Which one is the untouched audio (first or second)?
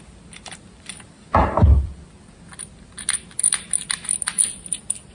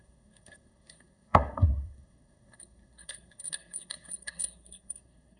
first